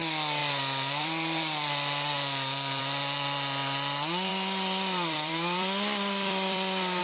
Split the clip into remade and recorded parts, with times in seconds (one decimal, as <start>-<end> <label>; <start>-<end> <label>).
0.0-0.4 recorded; 0.4-2.8 remade; 2.8-4.3 recorded; 4.3-7.0 remade